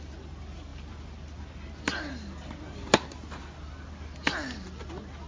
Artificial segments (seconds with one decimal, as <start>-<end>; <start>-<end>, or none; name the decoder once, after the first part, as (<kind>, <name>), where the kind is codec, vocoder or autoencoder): none